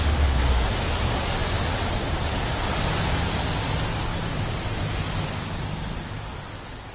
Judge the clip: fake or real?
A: real